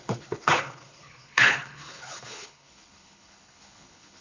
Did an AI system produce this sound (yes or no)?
yes